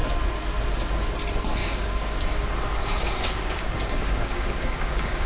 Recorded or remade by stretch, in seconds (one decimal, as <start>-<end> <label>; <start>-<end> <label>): 0.0-1.6 recorded; 1.6-2.3 remade; 2.3-2.8 recorded; 2.8-5.3 remade